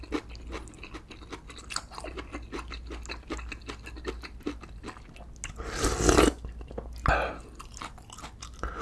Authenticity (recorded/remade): recorded